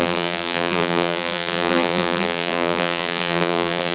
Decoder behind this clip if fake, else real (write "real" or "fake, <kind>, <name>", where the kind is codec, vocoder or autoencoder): fake, vocoder, BigVGAN v2